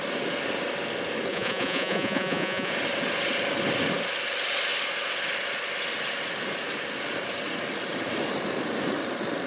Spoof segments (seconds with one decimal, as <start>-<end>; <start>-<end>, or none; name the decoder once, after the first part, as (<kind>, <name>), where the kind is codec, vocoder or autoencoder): 1.3-2.7 (vocoder, Vocos)